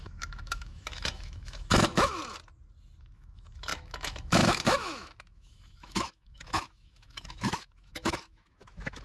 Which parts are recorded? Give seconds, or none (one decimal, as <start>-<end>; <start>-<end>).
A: 2.2-3.0